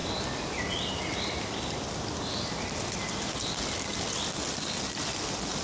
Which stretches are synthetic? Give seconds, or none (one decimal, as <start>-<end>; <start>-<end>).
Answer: none